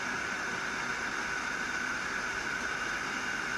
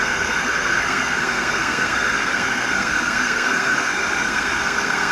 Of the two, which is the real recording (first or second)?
first